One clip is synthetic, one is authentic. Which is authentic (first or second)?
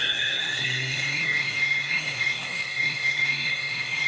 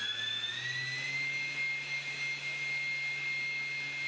second